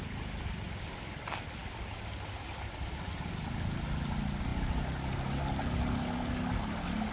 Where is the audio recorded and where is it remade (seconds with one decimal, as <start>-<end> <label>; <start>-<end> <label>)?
0.0-7.1 recorded